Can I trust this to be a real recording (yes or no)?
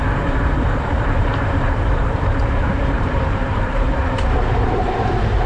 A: no